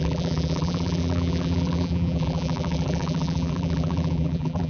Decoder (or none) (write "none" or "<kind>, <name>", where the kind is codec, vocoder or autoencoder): vocoder, BigVGAN v2